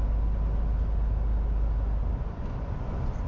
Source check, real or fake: real